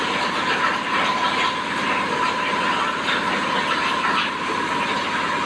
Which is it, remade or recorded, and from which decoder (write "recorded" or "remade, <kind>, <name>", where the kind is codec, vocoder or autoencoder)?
recorded